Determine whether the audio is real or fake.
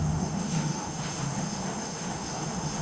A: fake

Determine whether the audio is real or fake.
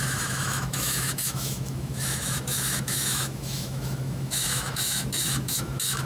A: fake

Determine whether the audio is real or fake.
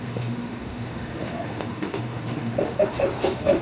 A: fake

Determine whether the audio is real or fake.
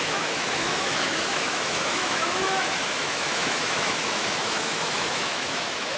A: fake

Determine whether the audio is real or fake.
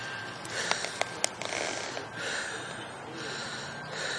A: real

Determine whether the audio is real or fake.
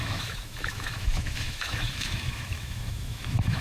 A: fake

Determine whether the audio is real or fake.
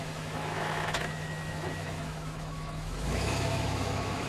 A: fake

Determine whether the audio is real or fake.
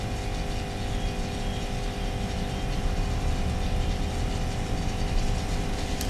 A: real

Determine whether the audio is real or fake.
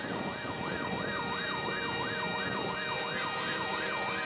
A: real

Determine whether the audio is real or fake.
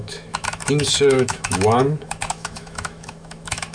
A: fake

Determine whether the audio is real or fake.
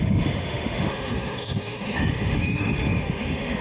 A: fake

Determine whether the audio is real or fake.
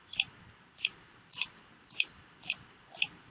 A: real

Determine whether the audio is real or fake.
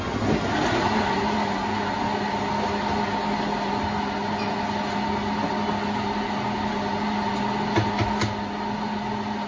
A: real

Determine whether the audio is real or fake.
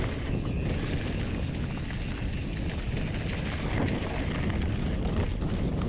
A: real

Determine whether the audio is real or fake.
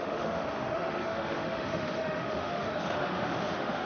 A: fake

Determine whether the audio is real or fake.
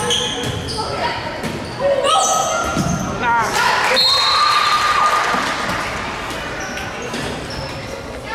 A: real